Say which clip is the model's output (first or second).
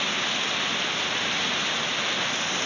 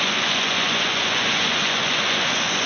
second